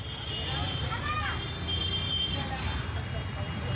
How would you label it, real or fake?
real